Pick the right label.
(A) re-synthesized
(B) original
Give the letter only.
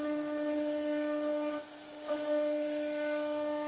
A